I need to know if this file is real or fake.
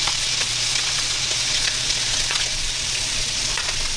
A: fake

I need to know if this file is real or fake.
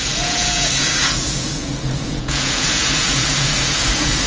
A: fake